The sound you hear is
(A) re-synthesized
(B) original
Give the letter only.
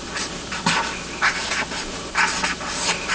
B